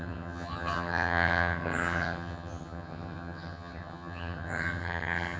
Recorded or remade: remade